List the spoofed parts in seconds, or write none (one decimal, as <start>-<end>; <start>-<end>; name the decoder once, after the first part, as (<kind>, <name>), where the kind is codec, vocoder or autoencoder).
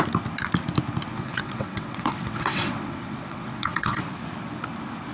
1.1-4.0 (vocoder, WaveNeXt)